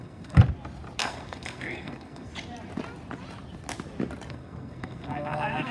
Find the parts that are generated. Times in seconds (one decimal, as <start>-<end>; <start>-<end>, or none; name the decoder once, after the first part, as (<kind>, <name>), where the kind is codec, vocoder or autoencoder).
0.0-0.4 (codec, SNAC); 1.0-2.3; 4.3-5.7